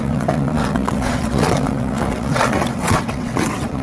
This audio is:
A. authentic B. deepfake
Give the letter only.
B